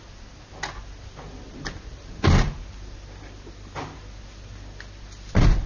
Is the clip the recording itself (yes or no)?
yes